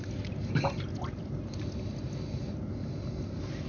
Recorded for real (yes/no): yes